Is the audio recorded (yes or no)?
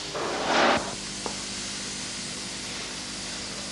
yes